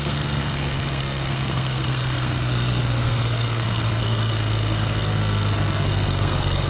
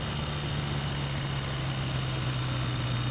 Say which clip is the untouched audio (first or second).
second